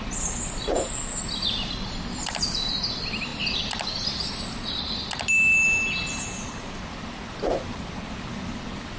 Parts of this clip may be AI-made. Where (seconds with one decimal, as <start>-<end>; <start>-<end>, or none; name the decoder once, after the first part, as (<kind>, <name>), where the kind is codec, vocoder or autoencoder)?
none